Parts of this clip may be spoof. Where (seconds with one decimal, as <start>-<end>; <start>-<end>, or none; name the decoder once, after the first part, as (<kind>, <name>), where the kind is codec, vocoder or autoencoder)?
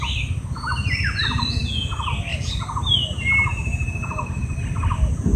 none